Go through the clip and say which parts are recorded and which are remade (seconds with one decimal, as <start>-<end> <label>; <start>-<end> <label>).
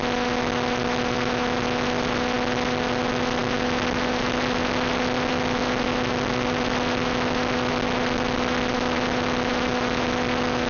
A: 0.0-10.7 recorded